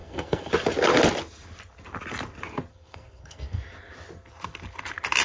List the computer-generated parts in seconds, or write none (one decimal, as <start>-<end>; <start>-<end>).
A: 0.0-0.5; 2.7-3.6